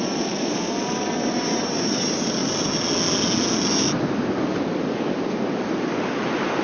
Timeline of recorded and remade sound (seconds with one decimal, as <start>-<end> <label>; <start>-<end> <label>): 0.0-6.6 recorded